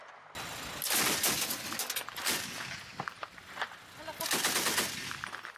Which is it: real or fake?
real